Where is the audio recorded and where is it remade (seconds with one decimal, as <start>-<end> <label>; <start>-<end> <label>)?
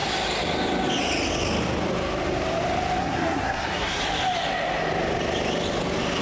0.0-3.0 recorded; 3.0-4.0 remade; 4.0-6.2 recorded